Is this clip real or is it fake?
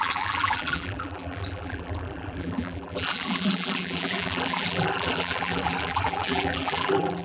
fake